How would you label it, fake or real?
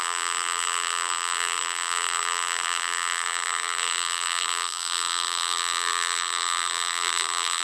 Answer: fake